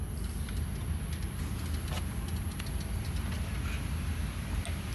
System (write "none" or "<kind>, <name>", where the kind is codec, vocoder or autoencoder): none